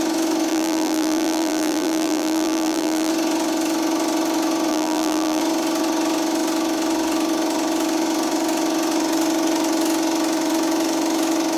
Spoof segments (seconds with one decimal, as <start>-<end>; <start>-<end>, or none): 0.5-3.1; 4.7-5.4